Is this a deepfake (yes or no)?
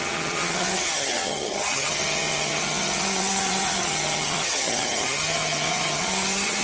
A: yes